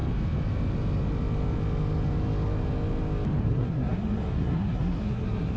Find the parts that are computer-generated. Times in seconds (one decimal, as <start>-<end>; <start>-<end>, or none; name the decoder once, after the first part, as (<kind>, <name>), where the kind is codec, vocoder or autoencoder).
3.4-5.6 (codec, SNAC)